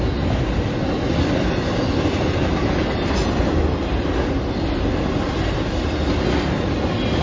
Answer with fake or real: real